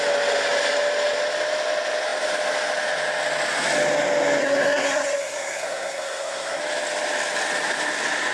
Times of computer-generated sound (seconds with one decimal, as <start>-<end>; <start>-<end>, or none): 4.4-6.6